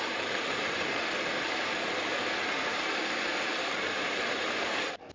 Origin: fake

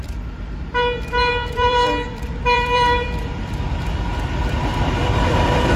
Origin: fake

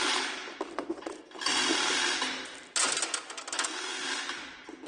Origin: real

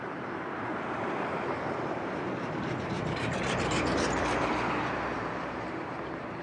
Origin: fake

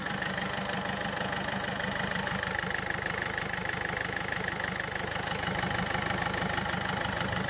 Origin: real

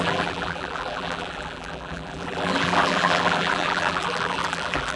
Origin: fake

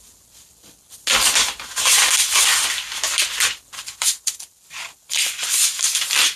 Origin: real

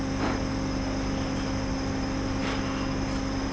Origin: real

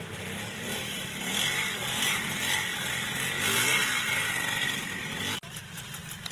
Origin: real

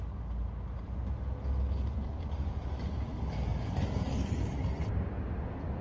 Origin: real